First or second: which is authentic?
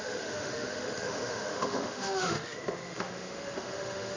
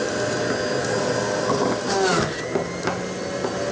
second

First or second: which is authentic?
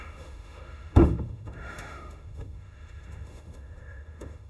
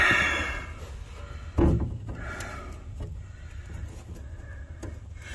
second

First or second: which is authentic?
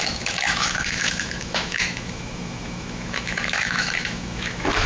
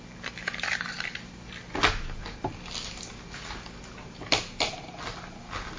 second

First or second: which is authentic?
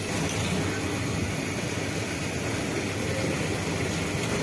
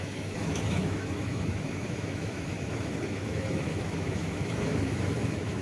first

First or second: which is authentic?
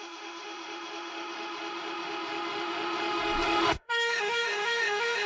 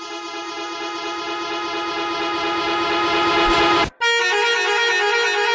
second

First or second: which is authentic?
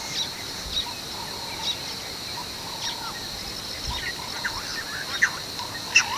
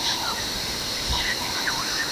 first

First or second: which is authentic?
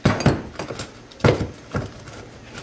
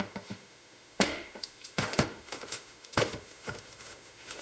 first